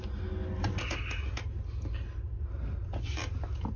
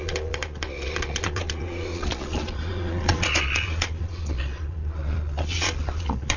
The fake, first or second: second